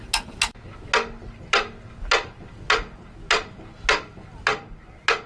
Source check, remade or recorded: recorded